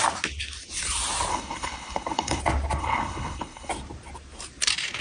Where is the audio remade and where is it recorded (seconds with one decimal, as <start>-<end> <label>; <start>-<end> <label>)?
0.0-1.3 recorded; 1.3-2.4 remade; 2.4-2.8 recorded; 2.8-3.7 remade; 3.7-5.0 recorded